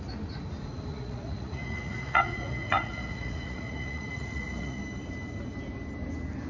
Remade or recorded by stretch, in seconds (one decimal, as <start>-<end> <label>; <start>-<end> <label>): 0.0-0.9 recorded; 0.9-4.8 remade; 4.8-6.5 recorded